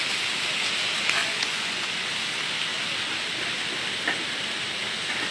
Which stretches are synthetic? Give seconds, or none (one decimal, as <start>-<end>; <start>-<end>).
1.2-2.1